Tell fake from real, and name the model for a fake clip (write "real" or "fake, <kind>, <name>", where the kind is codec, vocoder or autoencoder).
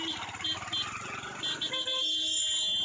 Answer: real